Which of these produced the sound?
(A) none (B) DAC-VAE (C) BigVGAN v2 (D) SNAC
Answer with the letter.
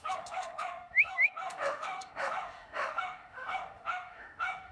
B